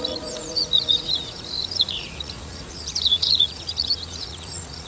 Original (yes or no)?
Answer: no